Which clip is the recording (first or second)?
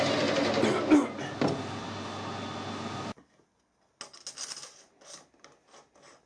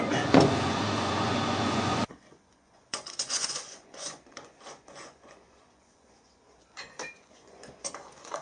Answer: first